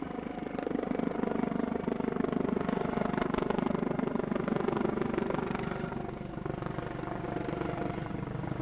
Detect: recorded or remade recorded